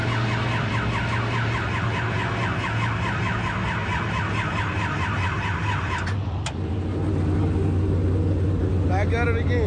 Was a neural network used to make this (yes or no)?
no